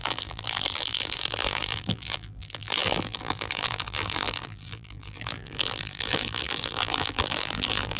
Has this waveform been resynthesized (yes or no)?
yes